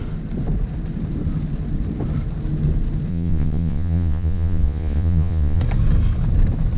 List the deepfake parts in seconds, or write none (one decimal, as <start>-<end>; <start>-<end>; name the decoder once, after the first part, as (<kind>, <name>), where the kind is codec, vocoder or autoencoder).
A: 3.1-5.6 (vocoder, Vocos)